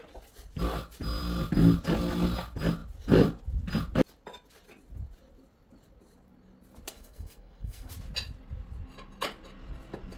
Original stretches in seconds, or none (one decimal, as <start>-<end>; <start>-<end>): 0.0-6.9; 7.9-10.2